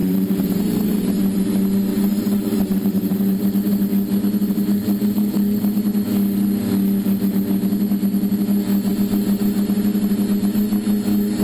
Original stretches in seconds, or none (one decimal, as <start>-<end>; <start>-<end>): 0.9-1.9; 3.7-4.4; 5.6-11.4